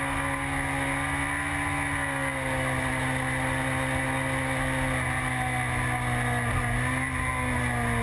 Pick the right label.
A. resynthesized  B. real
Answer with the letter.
B